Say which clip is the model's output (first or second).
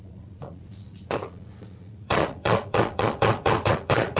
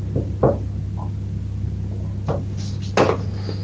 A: first